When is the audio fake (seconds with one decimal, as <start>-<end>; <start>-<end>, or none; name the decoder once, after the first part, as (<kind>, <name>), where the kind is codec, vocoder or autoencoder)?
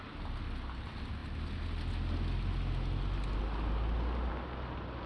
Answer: none